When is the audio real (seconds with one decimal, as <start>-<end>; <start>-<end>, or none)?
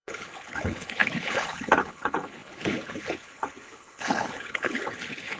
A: none